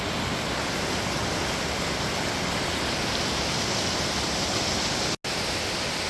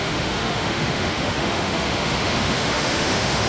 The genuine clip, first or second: first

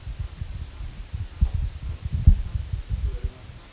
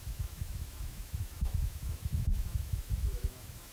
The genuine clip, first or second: first